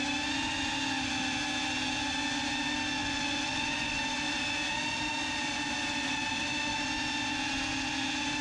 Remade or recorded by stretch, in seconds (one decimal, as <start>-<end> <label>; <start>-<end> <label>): 0.0-3.0 recorded; 3.0-4.0 remade; 4.0-8.4 recorded

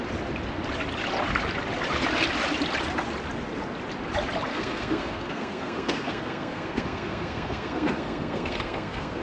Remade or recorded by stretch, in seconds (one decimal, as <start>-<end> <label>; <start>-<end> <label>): 0.0-4.5 recorded; 4.5-9.2 remade

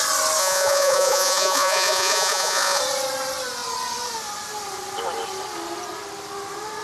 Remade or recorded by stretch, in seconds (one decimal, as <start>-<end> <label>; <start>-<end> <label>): 0.0-0.4 recorded; 0.4-2.8 remade; 2.8-6.8 recorded

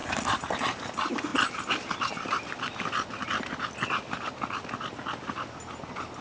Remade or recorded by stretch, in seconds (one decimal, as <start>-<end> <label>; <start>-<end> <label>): 0.0-6.2 recorded

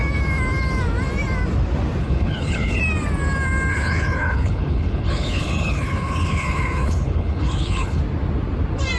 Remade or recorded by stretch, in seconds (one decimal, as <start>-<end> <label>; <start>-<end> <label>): 0.0-2.0 recorded; 2.0-2.8 remade; 2.8-3.7 recorded; 3.7-8.0 remade; 8.0-9.0 recorded

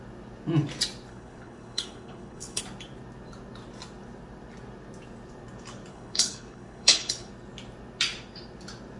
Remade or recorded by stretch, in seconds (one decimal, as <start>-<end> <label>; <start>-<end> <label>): 0.0-1.1 recorded; 1.1-2.6 remade; 2.6-5.9 recorded; 5.9-7.3 remade; 7.3-9.0 recorded